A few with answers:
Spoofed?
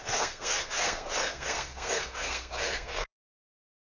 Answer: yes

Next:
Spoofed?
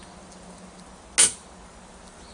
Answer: no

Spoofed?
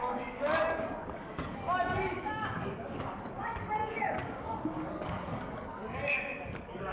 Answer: yes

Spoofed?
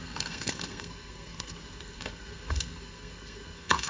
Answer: yes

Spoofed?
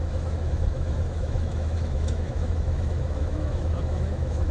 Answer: yes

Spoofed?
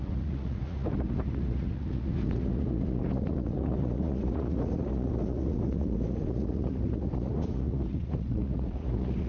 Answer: yes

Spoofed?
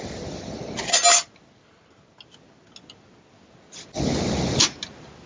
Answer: no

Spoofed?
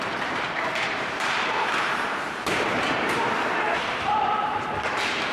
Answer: yes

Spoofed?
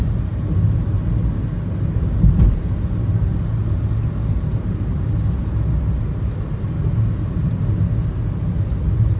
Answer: no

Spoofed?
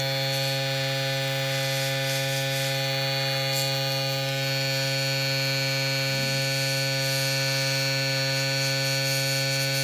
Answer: no